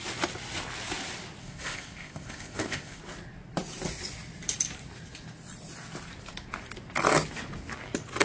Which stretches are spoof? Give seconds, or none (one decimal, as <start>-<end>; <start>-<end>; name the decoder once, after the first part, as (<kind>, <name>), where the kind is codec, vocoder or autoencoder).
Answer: 1.4-3.0 (codec, ZipCodec)